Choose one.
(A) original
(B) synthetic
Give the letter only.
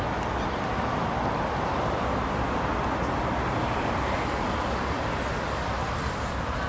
A